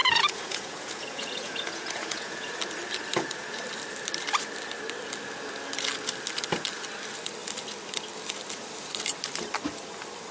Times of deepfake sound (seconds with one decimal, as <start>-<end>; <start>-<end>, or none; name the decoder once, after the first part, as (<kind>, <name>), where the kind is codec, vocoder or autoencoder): 0.0-2.5 (vocoder, Vocos)